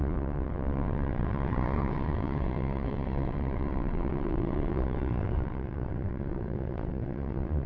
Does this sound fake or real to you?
fake